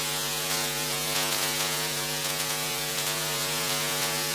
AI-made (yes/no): yes